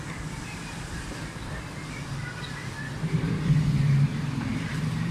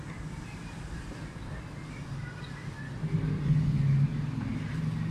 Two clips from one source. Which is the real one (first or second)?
second